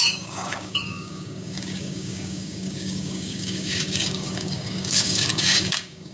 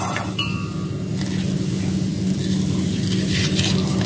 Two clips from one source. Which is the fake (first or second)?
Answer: first